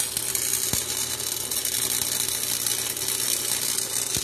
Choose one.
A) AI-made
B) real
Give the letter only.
B